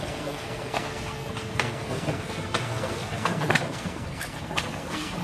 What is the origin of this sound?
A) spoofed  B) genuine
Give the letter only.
A